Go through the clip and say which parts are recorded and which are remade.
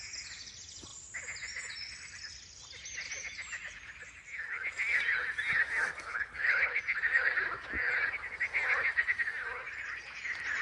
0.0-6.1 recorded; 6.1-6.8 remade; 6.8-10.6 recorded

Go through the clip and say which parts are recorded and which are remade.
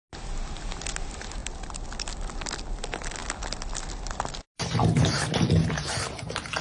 0.0-6.6 recorded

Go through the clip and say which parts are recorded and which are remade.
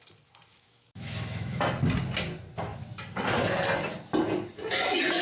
0.0-0.5 recorded; 0.5-1.6 remade; 1.6-5.2 recorded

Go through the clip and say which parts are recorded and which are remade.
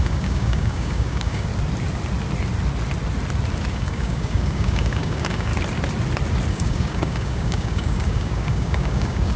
0.0-1.5 remade; 1.5-3.7 recorded; 3.7-5.5 remade; 5.5-6.5 recorded; 6.5-9.4 remade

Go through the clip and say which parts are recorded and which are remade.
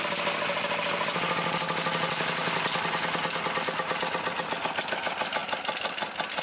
0.0-6.4 recorded